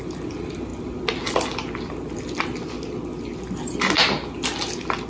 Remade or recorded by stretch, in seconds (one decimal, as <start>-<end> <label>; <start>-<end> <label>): 0.0-5.1 recorded